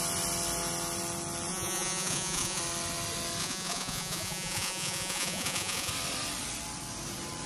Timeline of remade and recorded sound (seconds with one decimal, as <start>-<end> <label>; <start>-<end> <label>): 0.0-1.5 recorded; 1.5-2.6 remade; 2.6-3.4 recorded; 3.4-5.9 remade; 5.9-7.5 recorded